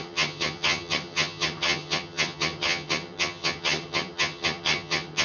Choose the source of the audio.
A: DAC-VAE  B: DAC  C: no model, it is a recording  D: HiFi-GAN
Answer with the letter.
D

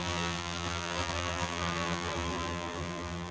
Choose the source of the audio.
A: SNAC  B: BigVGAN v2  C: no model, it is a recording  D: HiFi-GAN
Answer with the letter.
B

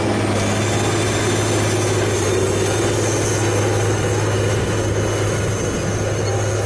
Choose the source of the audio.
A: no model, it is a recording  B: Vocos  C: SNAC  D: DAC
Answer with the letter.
A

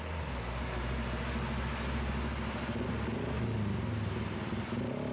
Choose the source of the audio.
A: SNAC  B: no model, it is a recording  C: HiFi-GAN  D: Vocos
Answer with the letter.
B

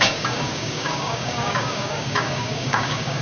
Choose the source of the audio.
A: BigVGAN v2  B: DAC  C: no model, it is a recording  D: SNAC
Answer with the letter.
B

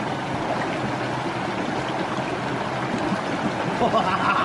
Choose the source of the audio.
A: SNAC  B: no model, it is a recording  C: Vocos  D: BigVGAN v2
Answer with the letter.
B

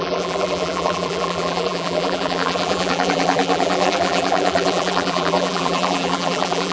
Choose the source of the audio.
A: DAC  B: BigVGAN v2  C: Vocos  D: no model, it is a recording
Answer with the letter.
B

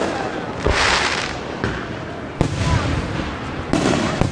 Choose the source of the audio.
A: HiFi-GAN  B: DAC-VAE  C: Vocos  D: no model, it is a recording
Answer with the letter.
D